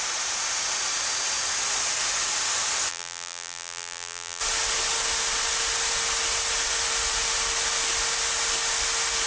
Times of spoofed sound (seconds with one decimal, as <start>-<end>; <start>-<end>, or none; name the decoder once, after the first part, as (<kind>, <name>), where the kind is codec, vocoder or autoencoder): 2.9-4.4 (vocoder, BigVGAN v2)